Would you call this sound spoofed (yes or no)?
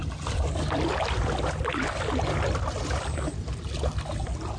no